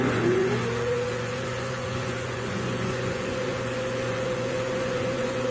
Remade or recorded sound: remade